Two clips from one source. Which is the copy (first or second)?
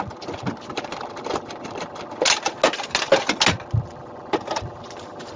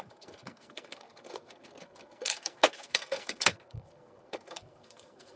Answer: second